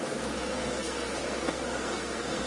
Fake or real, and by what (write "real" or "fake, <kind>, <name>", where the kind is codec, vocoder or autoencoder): fake, codec, SNAC